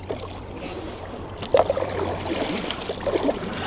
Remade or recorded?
remade